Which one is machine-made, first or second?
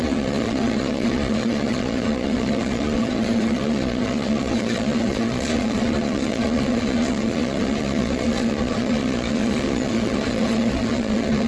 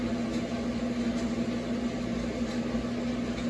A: first